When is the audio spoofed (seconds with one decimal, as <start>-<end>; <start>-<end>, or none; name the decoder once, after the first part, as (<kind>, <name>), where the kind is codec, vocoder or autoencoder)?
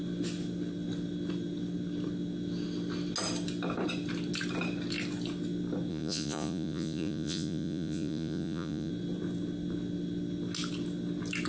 5.9-8.9 (vocoder, Vocos)